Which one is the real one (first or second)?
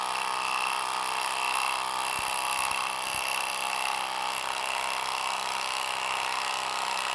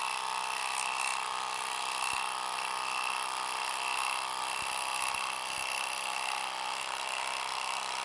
first